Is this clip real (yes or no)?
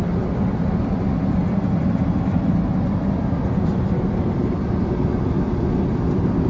yes